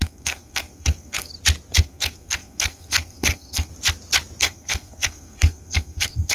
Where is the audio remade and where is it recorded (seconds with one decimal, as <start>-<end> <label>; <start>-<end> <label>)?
0.0-1.3 remade; 1.3-1.8 recorded; 1.8-3.7 remade; 3.7-4.4 recorded; 4.4-6.3 remade